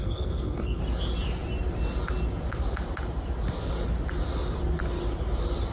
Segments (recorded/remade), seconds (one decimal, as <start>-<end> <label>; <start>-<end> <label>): 0.0-0.8 remade; 0.8-5.7 recorded